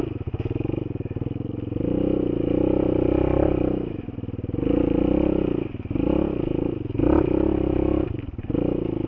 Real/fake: real